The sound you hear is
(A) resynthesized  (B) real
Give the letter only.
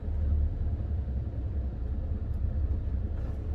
B